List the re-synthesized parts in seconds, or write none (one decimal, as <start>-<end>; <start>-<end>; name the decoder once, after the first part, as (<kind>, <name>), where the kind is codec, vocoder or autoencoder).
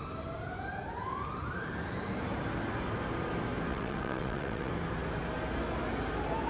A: 3.7-4.7 (vocoder, WaveNeXt)